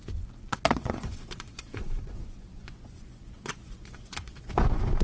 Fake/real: fake